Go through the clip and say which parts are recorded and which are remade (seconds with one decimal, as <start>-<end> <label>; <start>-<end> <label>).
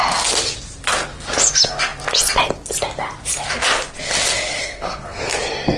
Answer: 0.0-4.6 recorded; 4.6-5.2 remade; 5.2-5.8 recorded